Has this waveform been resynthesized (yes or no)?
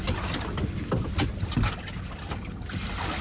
no